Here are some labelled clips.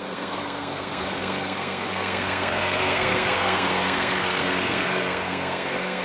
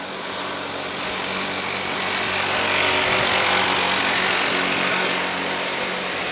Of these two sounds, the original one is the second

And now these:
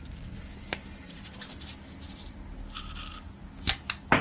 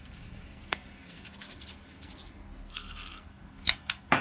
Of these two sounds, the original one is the first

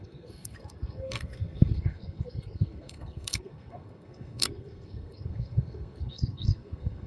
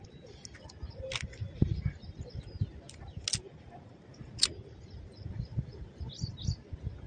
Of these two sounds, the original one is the second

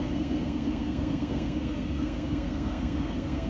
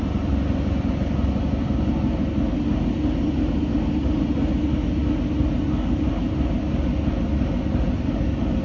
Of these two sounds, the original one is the second